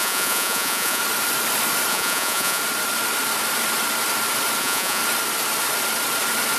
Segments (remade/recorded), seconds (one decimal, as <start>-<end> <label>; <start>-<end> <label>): 0.0-1.0 remade; 1.0-1.9 recorded; 1.9-2.6 remade; 2.6-4.6 recorded; 4.6-5.0 remade; 5.0-6.6 recorded